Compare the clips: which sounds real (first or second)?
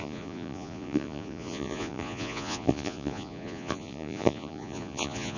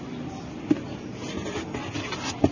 second